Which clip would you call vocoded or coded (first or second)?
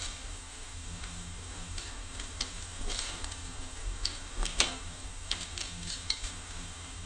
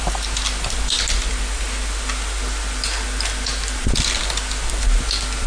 first